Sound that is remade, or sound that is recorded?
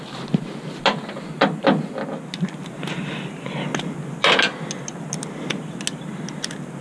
recorded